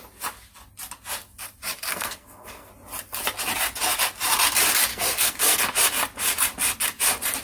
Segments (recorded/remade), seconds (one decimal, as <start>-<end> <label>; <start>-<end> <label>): 0.0-1.9 recorded; 1.9-2.7 remade; 2.7-4.9 recorded; 4.9-5.6 remade; 5.6-7.4 recorded